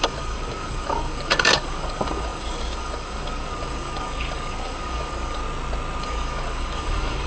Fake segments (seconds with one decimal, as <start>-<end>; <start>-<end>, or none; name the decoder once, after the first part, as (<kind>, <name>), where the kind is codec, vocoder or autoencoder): 0.0-5.4 (codec, DAC); 6.0-7.3